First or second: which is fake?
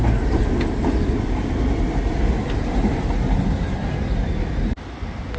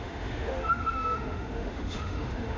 second